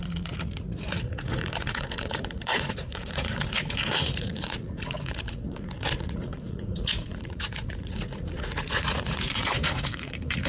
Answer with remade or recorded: remade